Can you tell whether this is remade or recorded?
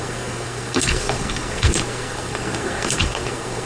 remade